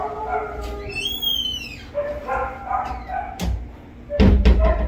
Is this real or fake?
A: real